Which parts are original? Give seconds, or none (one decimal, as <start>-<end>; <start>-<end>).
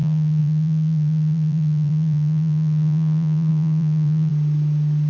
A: 4.3-5.1